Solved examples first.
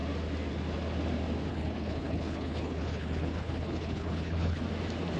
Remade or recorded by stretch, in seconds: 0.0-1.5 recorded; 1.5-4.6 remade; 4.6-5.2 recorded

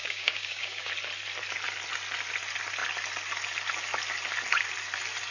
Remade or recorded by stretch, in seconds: 0.0-0.9 remade; 0.9-5.3 recorded